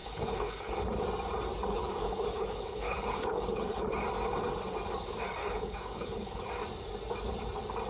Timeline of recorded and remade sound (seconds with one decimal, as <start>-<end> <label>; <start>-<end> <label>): 0.0-0.7 remade; 0.7-1.7 recorded; 1.7-3.8 remade; 3.8-5.4 recorded; 5.4-6.5 remade; 6.5-7.9 recorded